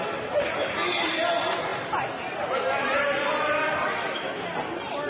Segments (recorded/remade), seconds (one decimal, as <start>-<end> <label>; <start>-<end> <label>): 0.0-5.1 recorded